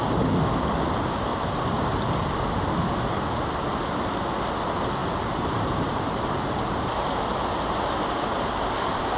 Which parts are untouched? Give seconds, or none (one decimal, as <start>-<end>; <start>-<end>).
0.0-1.3; 2.0-5.0; 7.2-9.2